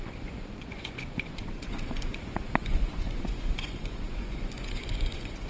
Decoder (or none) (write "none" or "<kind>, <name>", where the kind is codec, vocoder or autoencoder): vocoder, Vocos